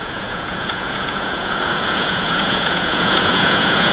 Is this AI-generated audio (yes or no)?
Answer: yes